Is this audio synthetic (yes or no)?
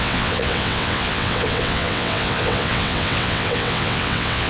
yes